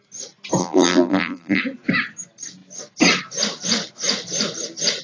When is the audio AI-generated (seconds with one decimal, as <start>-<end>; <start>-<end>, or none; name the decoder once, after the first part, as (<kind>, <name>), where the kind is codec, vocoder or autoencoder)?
0.6-1.6 (vocoder, BigVGAN v2)